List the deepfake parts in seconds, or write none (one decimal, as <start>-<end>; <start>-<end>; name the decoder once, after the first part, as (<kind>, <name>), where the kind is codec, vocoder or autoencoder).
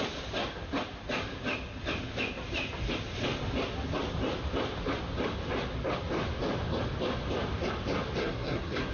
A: 8.2-8.9 (codec, SNAC)